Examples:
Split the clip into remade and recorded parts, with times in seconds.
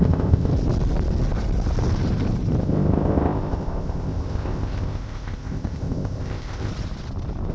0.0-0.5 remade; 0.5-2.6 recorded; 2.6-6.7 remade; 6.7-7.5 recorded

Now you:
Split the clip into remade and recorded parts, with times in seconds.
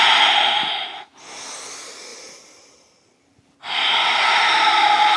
0.0-5.2 recorded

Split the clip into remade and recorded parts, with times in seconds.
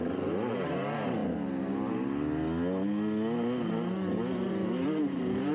0.0-1.2 remade; 1.2-4.5 recorded; 4.5-5.5 remade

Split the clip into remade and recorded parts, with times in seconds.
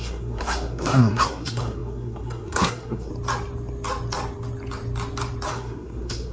0.0-3.1 remade; 3.1-5.5 recorded; 5.5-6.3 remade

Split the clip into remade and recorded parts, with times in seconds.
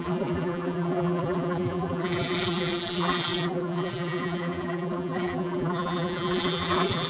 0.0-7.1 remade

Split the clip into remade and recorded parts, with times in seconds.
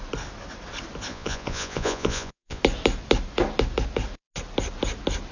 0.0-1.1 recorded; 1.1-2.6 remade; 2.6-5.3 recorded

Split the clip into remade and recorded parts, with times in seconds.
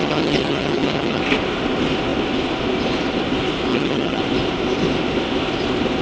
0.0-1.2 remade; 1.2-3.7 recorded; 3.7-4.2 remade; 4.2-6.0 recorded